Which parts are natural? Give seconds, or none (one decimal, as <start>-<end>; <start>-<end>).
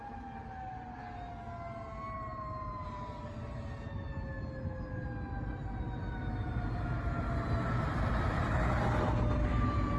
0.0-2.3; 3.6-10.0